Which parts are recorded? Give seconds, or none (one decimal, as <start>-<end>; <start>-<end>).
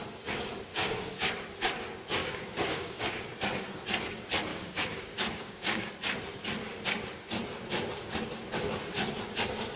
0.0-0.7; 1.3-2.2; 3.2-4.5; 5.9-9.8